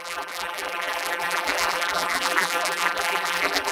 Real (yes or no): no